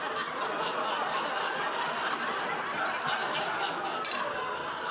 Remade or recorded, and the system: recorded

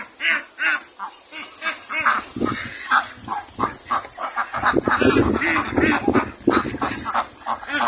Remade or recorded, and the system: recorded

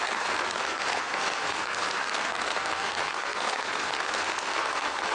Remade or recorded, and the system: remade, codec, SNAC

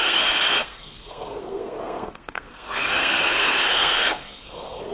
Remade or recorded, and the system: remade, codec, SNAC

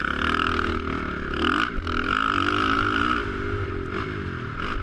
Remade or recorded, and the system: recorded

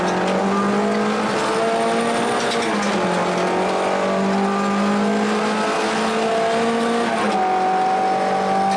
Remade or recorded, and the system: recorded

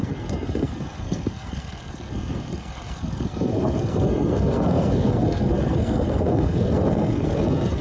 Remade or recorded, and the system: remade, codec, SNAC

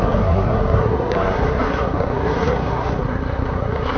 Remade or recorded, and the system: remade, codec, SNAC